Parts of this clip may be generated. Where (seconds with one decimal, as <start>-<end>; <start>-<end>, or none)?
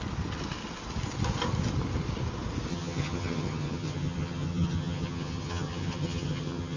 2.7-6.8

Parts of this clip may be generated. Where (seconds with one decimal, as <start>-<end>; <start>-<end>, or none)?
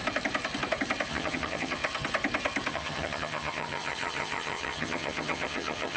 1.1-1.8; 2.7-6.0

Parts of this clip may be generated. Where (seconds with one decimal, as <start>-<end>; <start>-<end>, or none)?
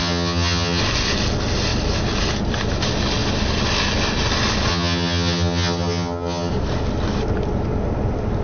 0.0-0.8; 4.7-6.5